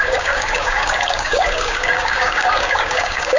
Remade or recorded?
remade